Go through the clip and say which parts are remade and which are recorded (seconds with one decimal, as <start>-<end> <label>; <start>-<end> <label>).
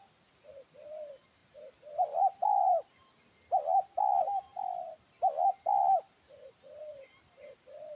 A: 0.0-8.0 recorded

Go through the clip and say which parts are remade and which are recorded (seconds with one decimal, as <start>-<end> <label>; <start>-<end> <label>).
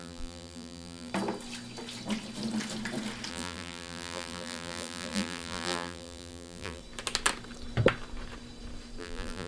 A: 0.0-1.1 remade; 1.1-3.3 recorded; 3.3-6.8 remade; 6.8-9.0 recorded; 9.0-9.5 remade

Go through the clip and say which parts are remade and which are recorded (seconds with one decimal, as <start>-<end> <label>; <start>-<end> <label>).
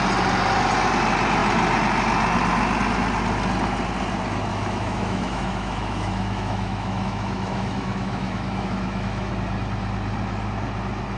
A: 0.0-4.5 recorded; 4.5-9.3 remade; 9.3-11.2 recorded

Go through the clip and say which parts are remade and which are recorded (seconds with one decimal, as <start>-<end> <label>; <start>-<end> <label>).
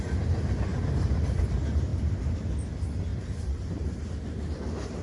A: 0.0-1.9 recorded; 1.9-2.7 remade; 2.7-3.1 recorded; 3.1-4.5 remade; 4.5-5.0 recorded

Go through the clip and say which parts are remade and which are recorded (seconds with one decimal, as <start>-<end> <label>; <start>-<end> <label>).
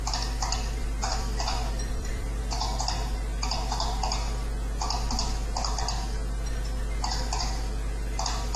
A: 0.0-0.8 recorded; 0.8-2.4 remade; 2.4-8.6 recorded